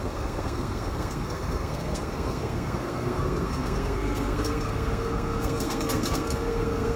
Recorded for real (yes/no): no